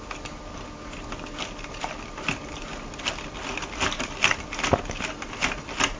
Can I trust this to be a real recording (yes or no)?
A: yes